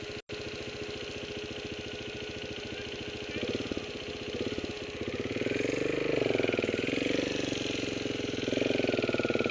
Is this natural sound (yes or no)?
yes